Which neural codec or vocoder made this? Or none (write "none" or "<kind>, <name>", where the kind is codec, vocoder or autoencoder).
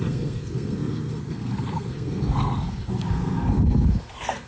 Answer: codec, SNAC